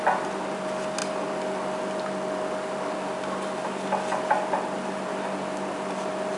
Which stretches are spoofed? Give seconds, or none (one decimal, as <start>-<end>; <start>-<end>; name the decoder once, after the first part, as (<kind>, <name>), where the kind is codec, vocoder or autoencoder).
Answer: none